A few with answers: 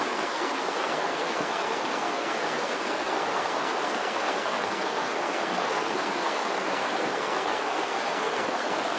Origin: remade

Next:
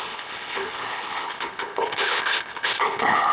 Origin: remade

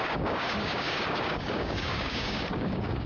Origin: remade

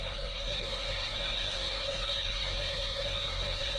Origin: remade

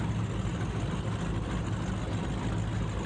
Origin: recorded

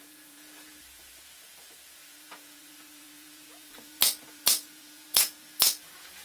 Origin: remade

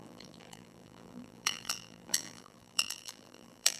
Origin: remade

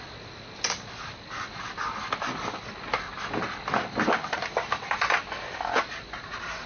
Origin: recorded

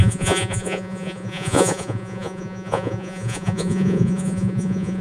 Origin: remade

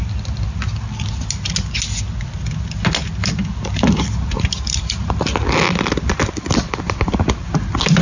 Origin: recorded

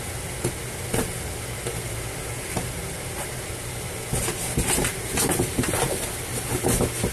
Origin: recorded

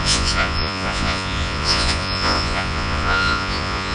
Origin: remade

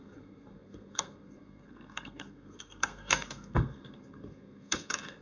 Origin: remade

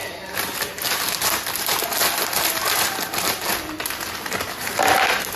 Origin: recorded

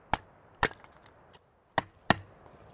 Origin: recorded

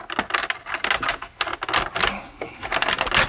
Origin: recorded